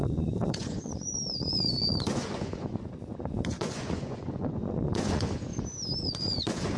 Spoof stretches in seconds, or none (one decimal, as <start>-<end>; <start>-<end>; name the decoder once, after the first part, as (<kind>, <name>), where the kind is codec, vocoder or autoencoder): 0.0-5.5 (vocoder, Vocos); 6.0-6.8